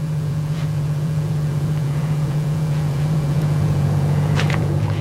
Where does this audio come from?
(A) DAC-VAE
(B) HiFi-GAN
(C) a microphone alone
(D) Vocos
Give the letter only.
D